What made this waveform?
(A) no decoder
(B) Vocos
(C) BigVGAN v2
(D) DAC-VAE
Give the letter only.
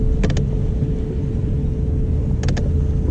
A